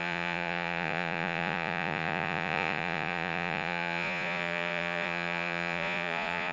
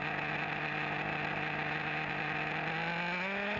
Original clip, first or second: second